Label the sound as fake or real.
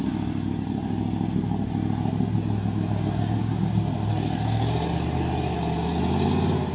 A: real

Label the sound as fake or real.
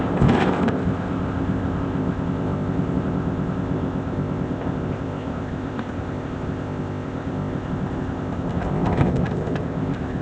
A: fake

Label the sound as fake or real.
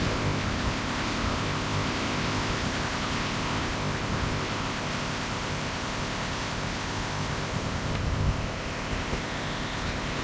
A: fake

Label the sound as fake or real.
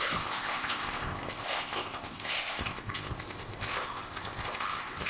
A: fake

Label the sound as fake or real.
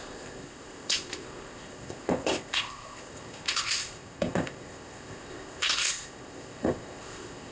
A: fake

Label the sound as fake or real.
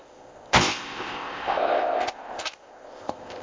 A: fake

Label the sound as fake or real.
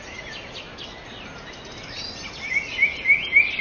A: real